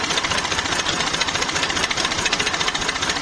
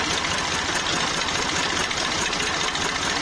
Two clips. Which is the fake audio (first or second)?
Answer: first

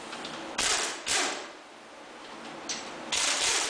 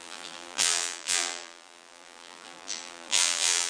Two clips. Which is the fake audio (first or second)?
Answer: second